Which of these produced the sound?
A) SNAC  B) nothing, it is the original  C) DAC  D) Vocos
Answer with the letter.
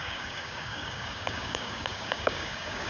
C